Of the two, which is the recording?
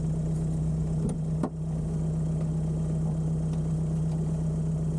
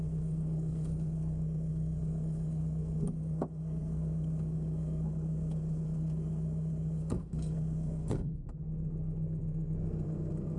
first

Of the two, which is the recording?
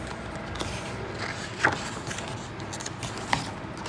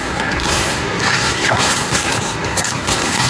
first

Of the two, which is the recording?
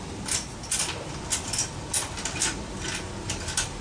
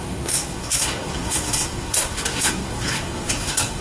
first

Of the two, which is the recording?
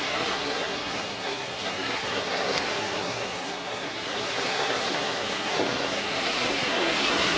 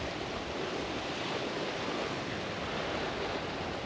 second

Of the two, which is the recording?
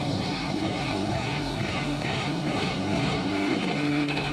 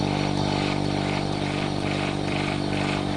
second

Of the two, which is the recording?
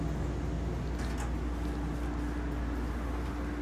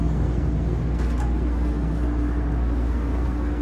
first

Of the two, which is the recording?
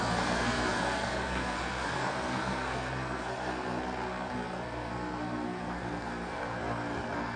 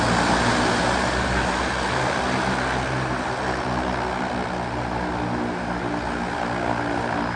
second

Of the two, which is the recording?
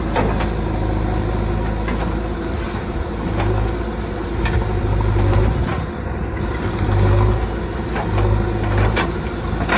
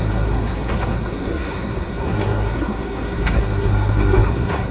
first